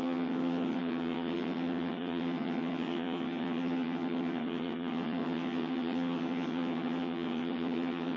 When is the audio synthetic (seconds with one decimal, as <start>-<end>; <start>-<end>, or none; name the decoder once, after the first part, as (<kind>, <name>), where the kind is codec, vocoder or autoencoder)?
0.0-8.2 (vocoder, HiFi-GAN)